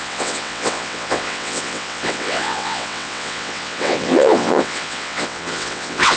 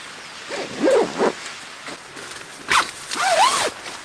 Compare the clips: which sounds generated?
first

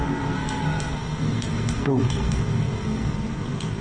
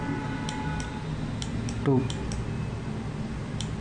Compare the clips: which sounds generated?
first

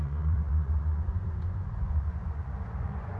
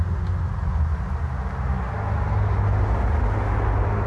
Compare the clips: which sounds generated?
first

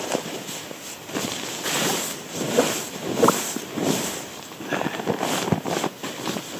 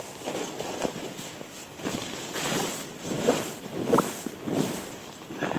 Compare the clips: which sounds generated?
second